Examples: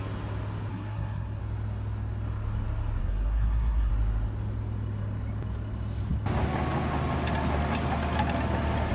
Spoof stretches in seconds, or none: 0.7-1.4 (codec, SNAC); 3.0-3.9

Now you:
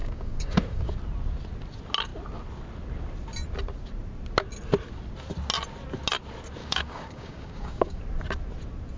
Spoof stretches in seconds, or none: 0.0-0.9 (codec, DAC); 6.6-8.0

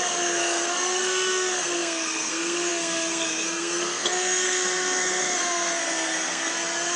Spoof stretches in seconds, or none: 0.0-7.0 (codec, SNAC)

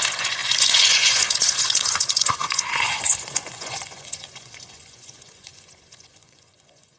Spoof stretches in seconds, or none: 0.0-7.0 (vocoder, Vocos)

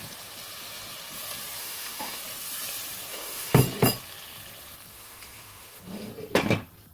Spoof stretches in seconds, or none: 1.6-2.2 (autoencoder, DAC-VAE); 3.1-3.6; 4.9-6.1

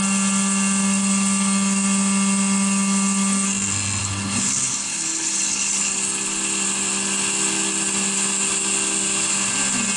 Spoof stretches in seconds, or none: 4.0-6.0 (codec, HILCodec)

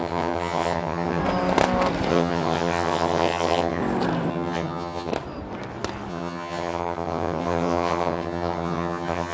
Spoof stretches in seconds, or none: 0.0-1.2 (vocoder, HiFi-GAN); 2.1-3.8; 4.3-5.1; 6.1-9.3

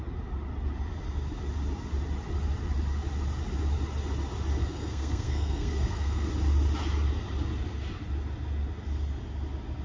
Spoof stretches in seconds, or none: 4.6-6.3 (codec, SNAC)